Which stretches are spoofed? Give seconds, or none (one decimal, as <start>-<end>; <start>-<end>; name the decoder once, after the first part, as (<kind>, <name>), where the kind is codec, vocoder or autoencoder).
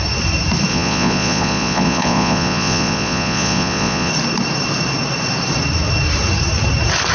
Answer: 0.7-4.1 (vocoder, Vocos)